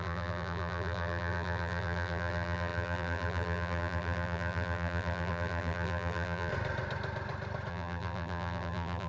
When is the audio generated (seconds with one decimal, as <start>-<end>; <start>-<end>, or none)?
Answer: 0.0-6.5; 7.7-9.1